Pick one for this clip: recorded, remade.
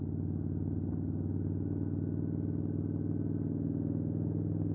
recorded